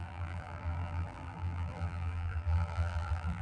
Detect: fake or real fake